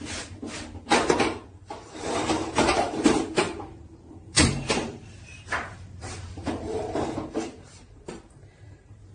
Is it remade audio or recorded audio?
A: remade